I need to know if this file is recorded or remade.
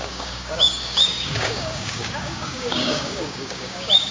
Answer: remade